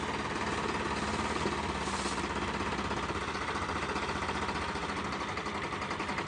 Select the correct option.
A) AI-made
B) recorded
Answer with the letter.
B